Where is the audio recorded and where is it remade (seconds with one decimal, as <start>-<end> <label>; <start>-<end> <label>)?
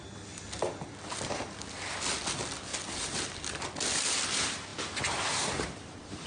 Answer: 0.0-6.3 recorded